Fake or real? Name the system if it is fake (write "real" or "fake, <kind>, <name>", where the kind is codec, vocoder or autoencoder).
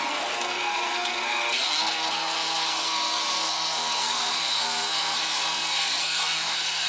fake, codec, SNAC